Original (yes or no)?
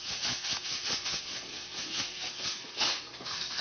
no